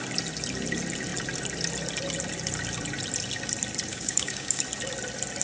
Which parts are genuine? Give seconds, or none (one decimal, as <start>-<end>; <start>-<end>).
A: 0.0-3.9; 4.6-5.4